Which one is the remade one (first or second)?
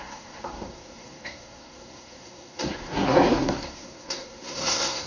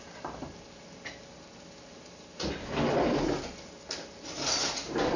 first